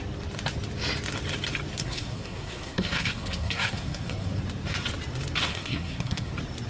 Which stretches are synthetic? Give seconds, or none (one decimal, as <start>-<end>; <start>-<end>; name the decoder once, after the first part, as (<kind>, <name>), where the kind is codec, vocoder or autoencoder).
1.8-4.4 (codec, SNAC); 5.5-6.3